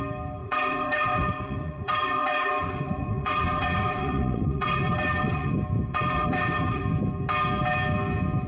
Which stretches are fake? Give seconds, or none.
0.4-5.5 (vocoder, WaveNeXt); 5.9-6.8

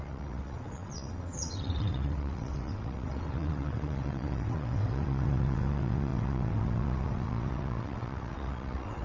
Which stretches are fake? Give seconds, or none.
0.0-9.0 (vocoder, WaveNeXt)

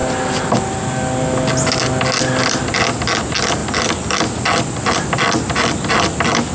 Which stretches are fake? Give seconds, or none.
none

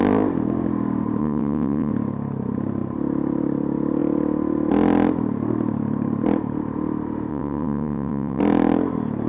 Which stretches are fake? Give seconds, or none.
1.2-1.9 (vocoder, WaveNeXt); 7.3-8.4

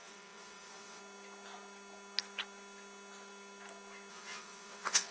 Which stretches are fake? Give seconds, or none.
0.0-1.0 (vocoder, WaveNeXt); 4.1-5.1

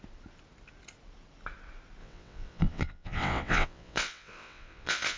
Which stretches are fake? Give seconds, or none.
2.0-5.2 (vocoder, WaveNeXt)

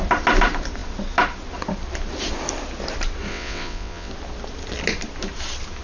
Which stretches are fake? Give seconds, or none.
3.3-4.1 (vocoder, WaveNeXt)